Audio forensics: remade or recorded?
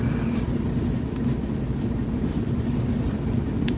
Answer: recorded